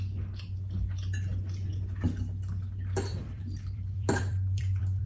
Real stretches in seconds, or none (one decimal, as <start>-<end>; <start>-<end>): 0.0-3.1